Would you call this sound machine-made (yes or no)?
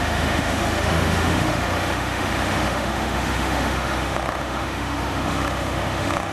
yes